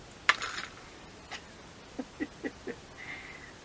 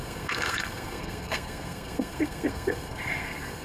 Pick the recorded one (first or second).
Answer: first